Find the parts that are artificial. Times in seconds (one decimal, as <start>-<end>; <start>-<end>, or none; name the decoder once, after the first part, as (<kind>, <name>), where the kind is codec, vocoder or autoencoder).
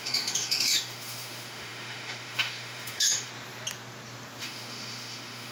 0.0-3.3 (autoencoder, DAC-VAE); 4.4-5.5